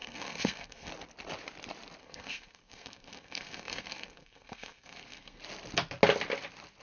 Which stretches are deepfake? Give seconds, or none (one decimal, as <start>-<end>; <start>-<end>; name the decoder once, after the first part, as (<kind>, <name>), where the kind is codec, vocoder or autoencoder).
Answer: 0.0-0.9 (codec, SNAC); 2.0-5.4